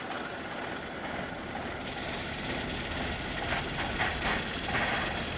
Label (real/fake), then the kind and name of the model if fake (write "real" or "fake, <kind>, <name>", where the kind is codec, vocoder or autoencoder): real